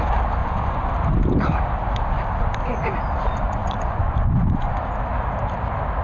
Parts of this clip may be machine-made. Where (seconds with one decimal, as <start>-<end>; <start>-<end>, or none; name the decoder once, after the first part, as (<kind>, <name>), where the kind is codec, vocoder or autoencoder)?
0.4-0.9 (vocoder, Vocos); 3.6-4.7